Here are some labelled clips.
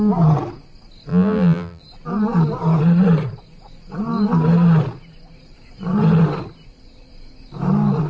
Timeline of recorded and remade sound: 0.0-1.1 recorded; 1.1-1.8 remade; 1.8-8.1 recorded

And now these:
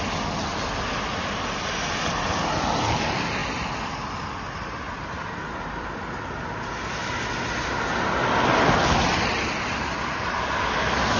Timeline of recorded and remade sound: 0.0-11.2 recorded

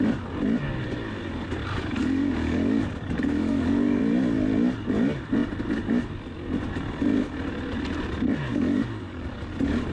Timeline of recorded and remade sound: 0.0-1.6 recorded; 1.6-4.0 remade; 4.0-8.5 recorded; 8.5-9.5 remade; 9.5-9.9 recorded

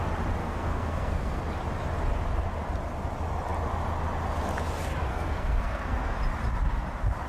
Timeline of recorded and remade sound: 0.0-0.4 recorded; 0.4-1.4 remade; 1.4-5.1 recorded; 5.1-6.2 remade; 6.2-7.3 recorded

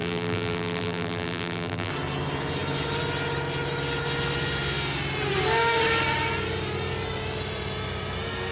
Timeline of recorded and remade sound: 0.0-1.9 remade; 1.9-8.5 recorded

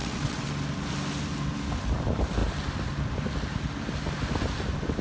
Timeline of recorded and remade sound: 0.0-0.5 remade; 0.5-5.0 recorded